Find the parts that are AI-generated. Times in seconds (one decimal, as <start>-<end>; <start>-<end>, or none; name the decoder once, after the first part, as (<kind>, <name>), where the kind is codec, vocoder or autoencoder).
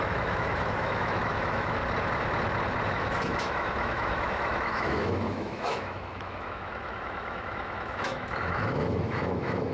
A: 0.0-1.8 (autoencoder, DAC-VAE); 2.9-9.7